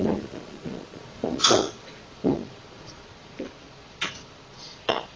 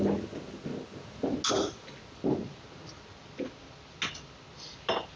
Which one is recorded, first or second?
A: second